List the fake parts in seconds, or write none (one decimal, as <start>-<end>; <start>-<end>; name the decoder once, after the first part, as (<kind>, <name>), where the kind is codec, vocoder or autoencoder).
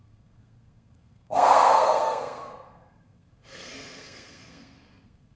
0.0-5.4 (codec, SNAC)